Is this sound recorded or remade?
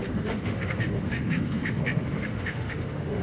remade